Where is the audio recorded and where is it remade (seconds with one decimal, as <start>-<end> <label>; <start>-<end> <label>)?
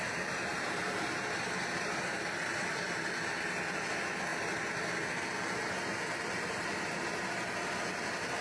0.0-0.5 recorded; 0.5-3.1 remade; 3.1-8.4 recorded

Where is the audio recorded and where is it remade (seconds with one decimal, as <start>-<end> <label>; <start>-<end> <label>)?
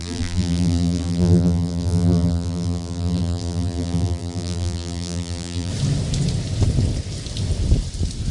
0.0-5.7 remade; 5.7-8.3 recorded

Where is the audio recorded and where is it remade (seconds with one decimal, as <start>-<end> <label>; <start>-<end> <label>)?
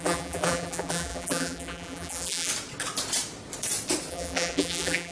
0.0-2.5 remade; 2.5-4.1 recorded; 4.1-5.1 remade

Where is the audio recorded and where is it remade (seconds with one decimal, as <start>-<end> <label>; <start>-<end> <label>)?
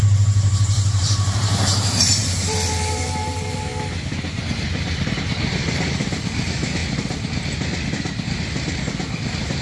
0.0-3.7 remade; 3.7-5.1 recorded; 5.1-6.8 remade; 6.8-9.6 recorded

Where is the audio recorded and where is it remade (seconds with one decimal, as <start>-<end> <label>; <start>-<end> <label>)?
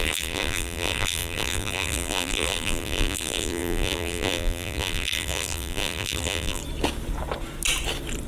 0.0-6.6 remade; 6.6-8.3 recorded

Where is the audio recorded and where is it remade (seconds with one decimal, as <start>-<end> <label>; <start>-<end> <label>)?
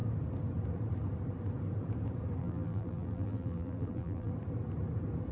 0.0-2.4 recorded; 2.4-4.3 remade; 4.3-5.3 recorded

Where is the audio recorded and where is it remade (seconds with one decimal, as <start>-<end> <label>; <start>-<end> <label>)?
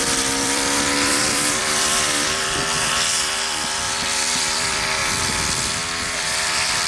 0.0-5.0 remade; 5.0-6.2 recorded; 6.2-6.9 remade